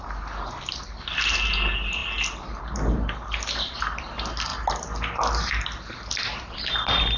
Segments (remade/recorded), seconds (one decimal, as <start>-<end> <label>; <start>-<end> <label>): 0.0-7.2 recorded